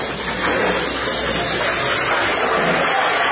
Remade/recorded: recorded